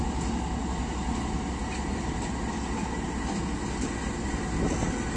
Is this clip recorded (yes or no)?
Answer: yes